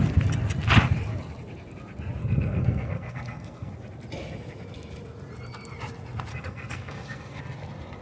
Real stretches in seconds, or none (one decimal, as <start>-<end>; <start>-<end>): 0.0-2.2; 3.7-6.3; 7.4-8.0